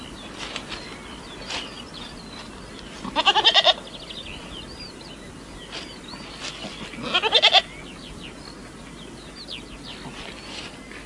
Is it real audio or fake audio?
real